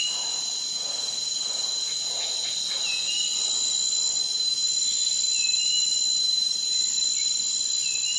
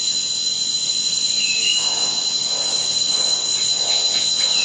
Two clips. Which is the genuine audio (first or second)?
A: first